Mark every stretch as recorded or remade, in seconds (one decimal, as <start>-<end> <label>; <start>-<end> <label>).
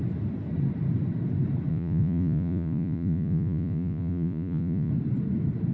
0.0-1.7 recorded; 1.7-4.9 remade; 4.9-5.7 recorded